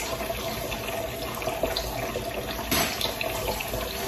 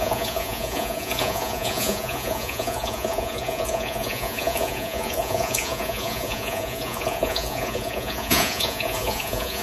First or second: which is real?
first